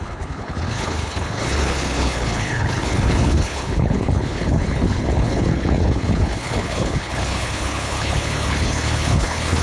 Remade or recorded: remade